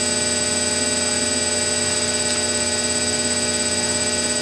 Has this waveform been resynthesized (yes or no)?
no